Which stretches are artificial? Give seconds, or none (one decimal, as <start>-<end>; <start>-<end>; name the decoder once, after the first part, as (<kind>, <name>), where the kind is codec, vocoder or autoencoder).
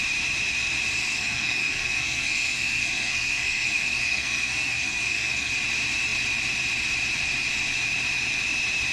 1.1-5.5 (codec, SNAC)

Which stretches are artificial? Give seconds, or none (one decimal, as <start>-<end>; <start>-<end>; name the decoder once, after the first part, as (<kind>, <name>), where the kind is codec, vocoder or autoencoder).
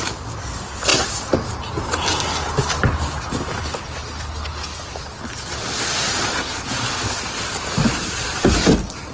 none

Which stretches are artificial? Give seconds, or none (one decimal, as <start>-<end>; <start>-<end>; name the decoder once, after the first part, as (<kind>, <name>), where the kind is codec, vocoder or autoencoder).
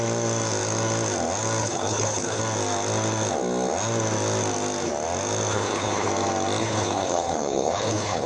1.6-2.4 (codec, HILCodec); 5.5-6.1; 6.6-8.3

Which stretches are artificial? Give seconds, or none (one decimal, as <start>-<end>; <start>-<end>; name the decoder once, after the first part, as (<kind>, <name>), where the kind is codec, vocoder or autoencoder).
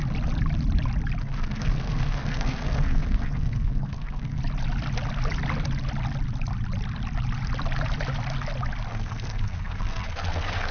1.2-4.4 (codec, SNAC); 8.9-10.7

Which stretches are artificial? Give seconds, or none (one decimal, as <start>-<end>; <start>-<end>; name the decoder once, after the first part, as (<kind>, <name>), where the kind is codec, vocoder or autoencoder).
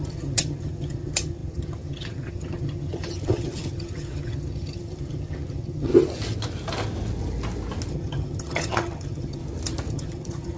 0.0-5.9 (vocoder, HiFi-GAN); 7.9-9.4; 9.9-10.6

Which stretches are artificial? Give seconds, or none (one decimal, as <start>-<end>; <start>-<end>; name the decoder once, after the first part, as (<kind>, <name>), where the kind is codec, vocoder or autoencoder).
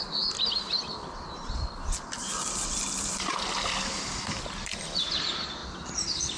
0.0-6.4 (vocoder, BigVGAN v2)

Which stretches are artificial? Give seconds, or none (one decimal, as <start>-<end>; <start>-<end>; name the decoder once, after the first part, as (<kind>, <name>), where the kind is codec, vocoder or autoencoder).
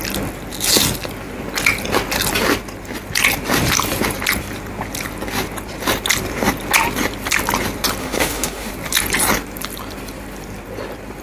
8.0-8.7 (autoencoder, DAC-VAE)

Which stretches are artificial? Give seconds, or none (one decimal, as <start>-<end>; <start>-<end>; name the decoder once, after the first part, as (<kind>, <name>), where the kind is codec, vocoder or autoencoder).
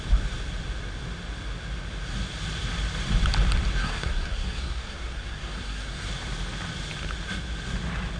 3.8-6.1 (codec, SNAC)